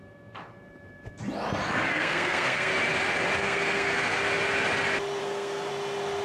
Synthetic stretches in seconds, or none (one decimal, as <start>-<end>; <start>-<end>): 1.9-2.7; 3.4-4.2; 5.2-5.7